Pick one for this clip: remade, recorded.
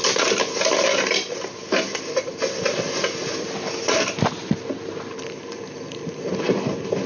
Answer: recorded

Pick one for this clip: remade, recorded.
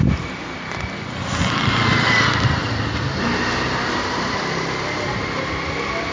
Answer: recorded